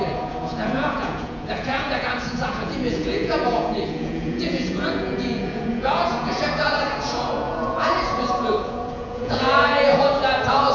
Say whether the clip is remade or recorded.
remade